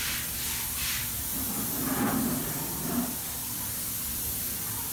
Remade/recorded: recorded